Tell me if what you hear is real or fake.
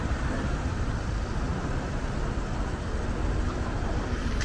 real